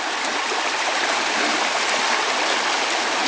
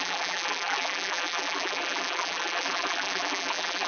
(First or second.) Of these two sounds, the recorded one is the first